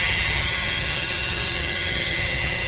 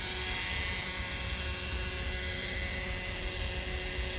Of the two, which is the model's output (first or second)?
first